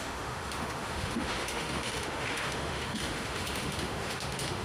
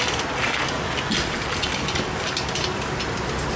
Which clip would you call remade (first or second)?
first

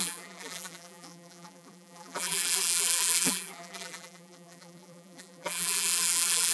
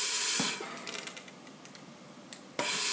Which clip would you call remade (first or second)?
first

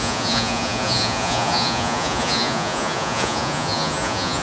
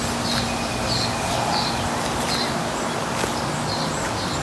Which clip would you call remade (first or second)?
first